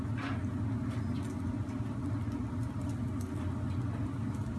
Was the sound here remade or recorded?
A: recorded